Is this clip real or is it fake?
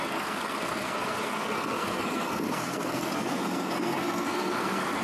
fake